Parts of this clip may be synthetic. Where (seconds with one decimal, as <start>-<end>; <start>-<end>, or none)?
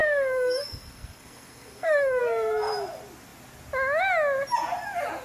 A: 0.0-2.2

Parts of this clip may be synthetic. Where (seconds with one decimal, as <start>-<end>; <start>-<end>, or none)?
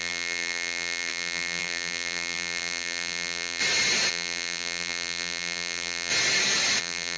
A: 0.0-3.6; 4.1-6.1; 6.8-7.2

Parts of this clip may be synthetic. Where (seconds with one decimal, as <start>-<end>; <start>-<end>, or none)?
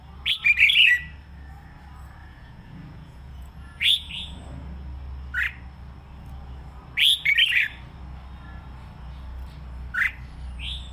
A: 2.2-4.1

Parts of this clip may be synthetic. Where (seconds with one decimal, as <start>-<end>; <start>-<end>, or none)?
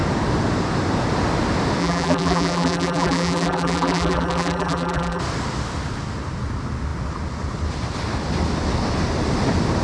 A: 1.8-5.2